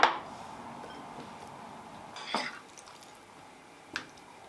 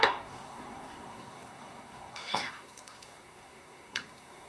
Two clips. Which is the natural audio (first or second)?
first